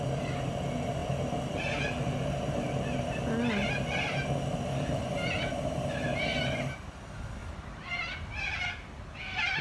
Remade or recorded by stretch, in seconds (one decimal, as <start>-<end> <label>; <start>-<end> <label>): 0.0-7.4 recorded; 7.4-8.0 remade; 8.0-9.6 recorded